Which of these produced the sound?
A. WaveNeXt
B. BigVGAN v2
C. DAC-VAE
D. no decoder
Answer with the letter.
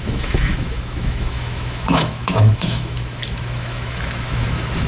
C